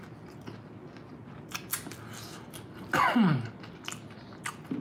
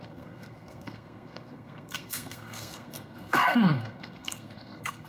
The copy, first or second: second